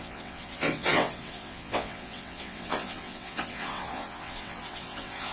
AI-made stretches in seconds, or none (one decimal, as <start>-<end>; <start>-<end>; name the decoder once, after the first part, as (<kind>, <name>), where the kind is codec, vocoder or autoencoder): 0.0-5.3 (vocoder, WaveNeXt)